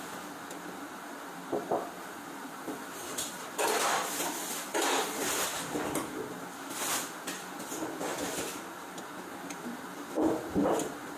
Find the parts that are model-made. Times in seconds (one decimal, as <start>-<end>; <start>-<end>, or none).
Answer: none